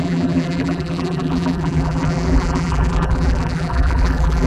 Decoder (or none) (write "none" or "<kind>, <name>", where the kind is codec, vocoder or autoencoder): vocoder, BigVGAN v2